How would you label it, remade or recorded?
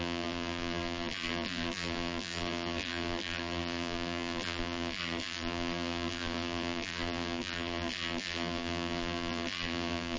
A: remade